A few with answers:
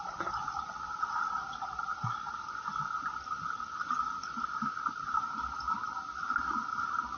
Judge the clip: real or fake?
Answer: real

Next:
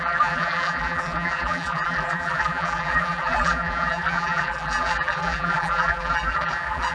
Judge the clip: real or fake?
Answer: fake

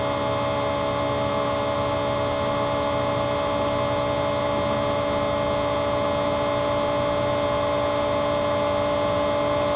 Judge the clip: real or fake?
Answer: real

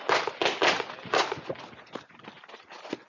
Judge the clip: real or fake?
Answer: real